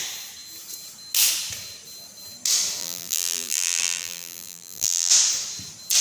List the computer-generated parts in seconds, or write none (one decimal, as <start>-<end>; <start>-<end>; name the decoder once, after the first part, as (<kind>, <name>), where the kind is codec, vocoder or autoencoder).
2.8-5.1 (vocoder, BigVGAN v2)